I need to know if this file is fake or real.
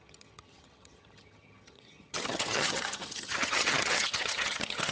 fake